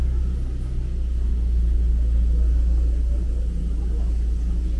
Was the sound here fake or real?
real